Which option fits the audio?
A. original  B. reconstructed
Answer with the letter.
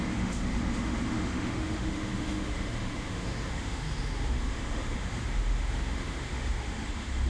B